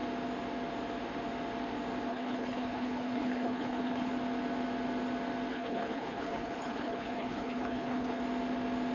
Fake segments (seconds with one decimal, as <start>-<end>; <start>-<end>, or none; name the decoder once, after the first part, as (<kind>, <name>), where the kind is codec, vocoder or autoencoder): 2.1-4.1 (codec, HILCodec); 5.5-8.2